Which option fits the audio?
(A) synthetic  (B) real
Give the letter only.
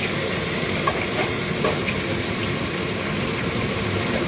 A